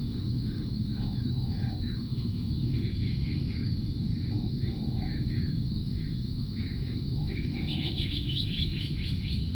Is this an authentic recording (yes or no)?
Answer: no